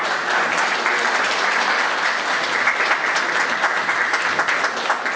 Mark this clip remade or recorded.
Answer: recorded